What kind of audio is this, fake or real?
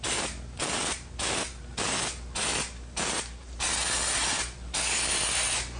real